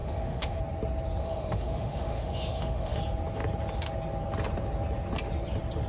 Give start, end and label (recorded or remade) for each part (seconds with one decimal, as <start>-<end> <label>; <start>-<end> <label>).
0.0-0.6 remade; 0.6-1.2 recorded; 1.2-3.0 remade; 3.0-5.9 recorded